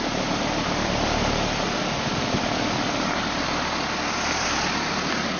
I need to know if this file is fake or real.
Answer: fake